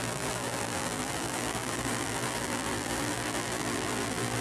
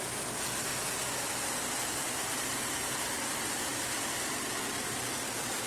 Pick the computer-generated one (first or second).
first